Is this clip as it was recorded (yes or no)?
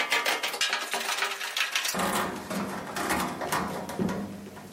yes